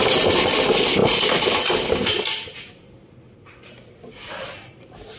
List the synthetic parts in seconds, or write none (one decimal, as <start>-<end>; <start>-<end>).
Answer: none